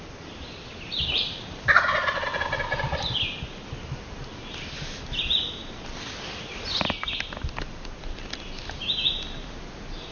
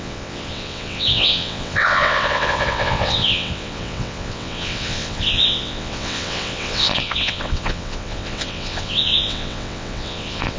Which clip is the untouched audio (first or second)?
first